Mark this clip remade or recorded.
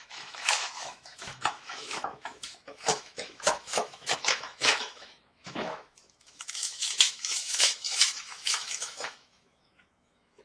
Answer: remade